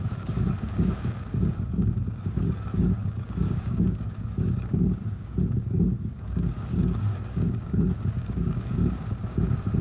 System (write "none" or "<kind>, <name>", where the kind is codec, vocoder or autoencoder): codec, DAC